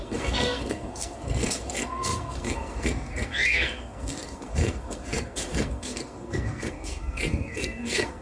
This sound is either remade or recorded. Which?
remade